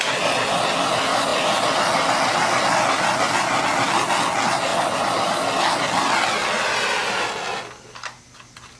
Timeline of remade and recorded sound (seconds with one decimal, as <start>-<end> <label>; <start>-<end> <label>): 0.0-8.8 recorded